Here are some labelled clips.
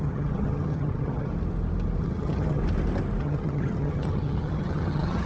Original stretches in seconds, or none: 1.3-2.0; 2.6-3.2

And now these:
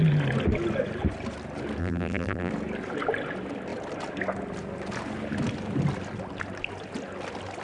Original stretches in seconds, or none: 0.0-1.8; 2.5-7.6

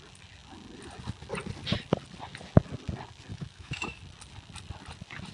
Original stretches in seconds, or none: 0.0-3.3; 4.0-5.3

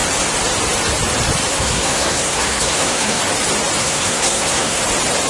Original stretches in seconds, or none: 0.0-1.5; 3.2-3.8; 4.8-5.3

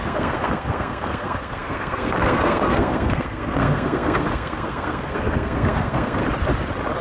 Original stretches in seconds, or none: 6.2-7.0

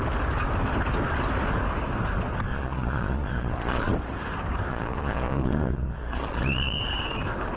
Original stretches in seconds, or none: 0.0-2.5; 3.9-4.7; 6.8-7.6